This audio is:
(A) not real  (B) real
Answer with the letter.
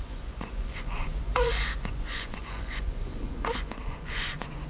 A